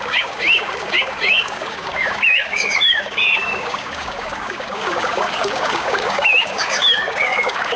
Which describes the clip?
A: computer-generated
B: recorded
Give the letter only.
A